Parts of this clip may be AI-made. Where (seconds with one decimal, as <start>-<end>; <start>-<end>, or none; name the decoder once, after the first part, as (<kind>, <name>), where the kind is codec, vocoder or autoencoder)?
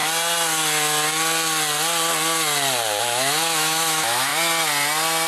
3.0-4.3 (autoencoder, DAC-VAE)